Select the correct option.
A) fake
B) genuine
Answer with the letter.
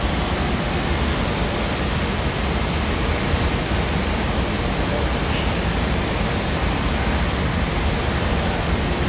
B